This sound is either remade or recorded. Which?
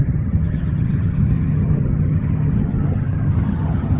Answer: remade